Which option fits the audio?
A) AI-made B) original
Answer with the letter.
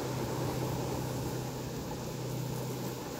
B